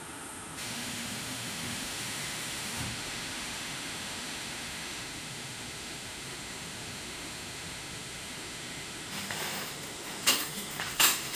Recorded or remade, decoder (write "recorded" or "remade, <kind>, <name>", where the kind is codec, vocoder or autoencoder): remade, autoencoder, DAC-VAE